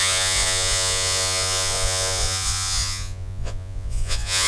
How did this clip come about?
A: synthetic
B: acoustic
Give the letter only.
A